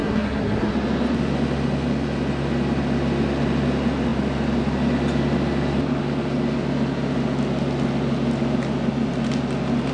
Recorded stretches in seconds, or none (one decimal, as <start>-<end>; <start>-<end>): 0.7-9.9